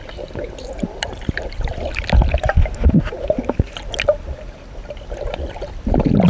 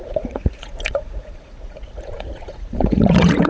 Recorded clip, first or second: first